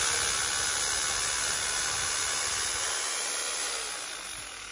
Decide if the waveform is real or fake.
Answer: real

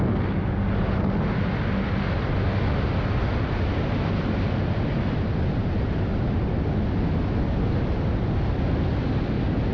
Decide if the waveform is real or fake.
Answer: real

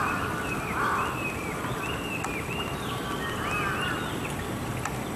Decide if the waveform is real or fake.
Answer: real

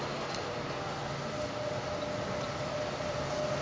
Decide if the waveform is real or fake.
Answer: real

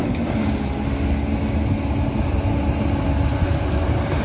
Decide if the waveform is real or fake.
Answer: real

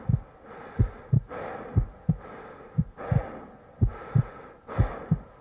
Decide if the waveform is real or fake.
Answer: real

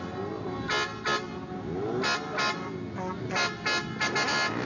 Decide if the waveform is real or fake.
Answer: real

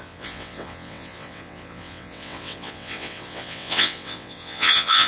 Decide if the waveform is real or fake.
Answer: fake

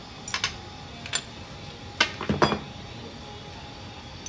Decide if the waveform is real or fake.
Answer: real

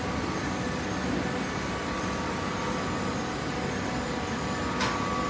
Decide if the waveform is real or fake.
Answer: real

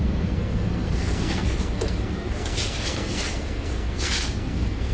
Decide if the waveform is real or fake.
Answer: fake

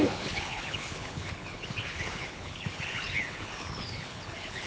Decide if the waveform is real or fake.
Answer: fake